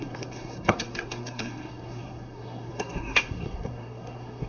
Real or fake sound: fake